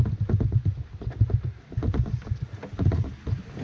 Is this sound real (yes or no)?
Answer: yes